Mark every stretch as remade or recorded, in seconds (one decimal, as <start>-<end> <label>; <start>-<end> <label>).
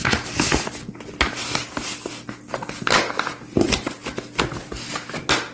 0.0-5.5 recorded